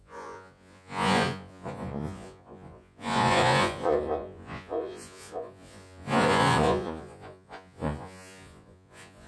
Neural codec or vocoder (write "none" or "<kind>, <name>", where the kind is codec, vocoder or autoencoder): vocoder, Vocos